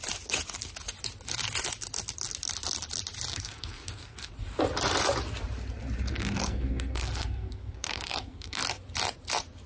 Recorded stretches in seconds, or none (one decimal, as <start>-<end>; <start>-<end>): 0.0-3.3; 4.3-6.1; 8.6-9.7